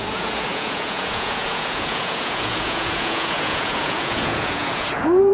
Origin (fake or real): fake